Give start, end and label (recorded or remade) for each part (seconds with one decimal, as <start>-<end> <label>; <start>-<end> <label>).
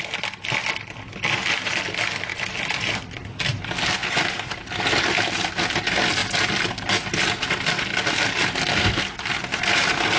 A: 0.0-10.2 recorded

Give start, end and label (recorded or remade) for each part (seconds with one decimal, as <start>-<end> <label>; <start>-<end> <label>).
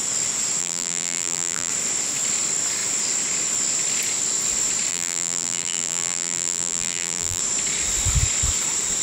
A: 0.0-0.6 recorded; 0.6-1.7 remade; 1.7-4.9 recorded; 4.9-7.4 remade; 7.4-9.0 recorded